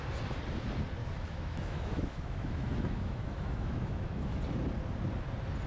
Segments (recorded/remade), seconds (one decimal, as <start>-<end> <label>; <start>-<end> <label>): 0.0-1.0 recorded; 1.0-4.4 remade; 4.4-5.7 recorded